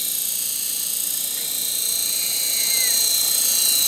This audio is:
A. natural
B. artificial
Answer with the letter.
A